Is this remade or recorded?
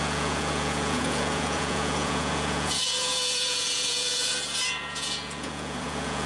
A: remade